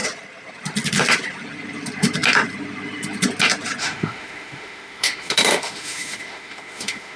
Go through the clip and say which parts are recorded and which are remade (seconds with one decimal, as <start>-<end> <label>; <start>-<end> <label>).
0.0-3.8 recorded; 3.8-7.2 remade